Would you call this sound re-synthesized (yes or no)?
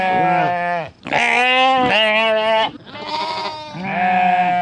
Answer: no